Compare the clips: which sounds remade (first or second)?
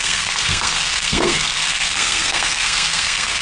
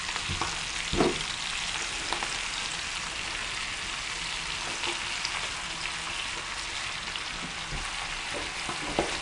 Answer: first